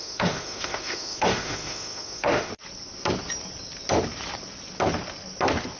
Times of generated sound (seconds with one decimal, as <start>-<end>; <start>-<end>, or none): 0.0-2.5